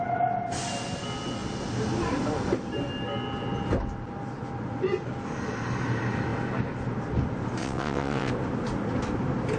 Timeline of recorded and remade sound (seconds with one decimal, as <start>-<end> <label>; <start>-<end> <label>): 0.0-7.6 recorded; 7.6-8.3 remade; 8.3-9.6 recorded